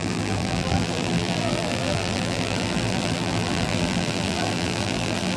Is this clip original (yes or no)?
no